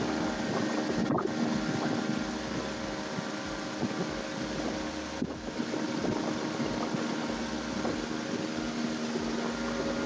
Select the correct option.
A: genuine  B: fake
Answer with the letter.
A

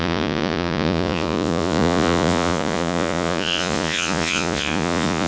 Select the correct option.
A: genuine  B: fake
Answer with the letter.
B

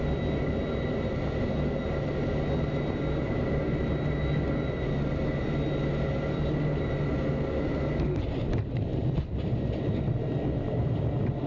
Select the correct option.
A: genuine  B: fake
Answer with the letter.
A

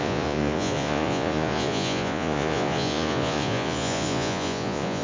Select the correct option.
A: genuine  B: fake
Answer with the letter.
B